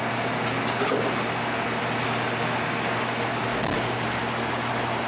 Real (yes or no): yes